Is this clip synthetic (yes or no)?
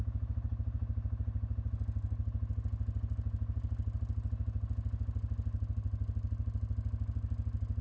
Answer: no